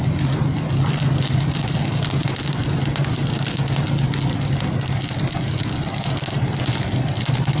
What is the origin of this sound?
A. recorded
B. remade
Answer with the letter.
A